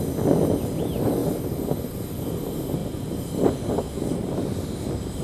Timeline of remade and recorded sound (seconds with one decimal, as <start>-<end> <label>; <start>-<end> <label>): 0.0-1.2 recorded; 1.2-1.9 remade; 1.9-5.2 recorded